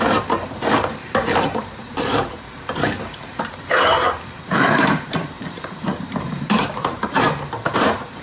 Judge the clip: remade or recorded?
remade